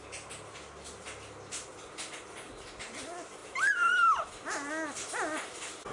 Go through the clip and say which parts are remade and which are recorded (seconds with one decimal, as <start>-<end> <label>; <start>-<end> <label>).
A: 0.0-5.9 recorded